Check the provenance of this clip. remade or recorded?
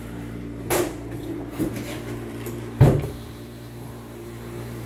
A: remade